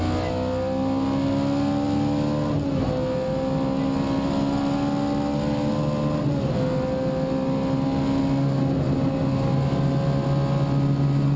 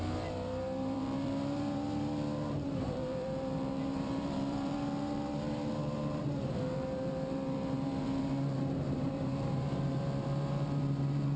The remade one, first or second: second